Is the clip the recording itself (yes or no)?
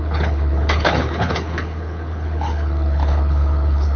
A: no